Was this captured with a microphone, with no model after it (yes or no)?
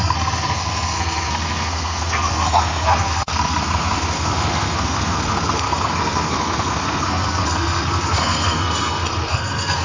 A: no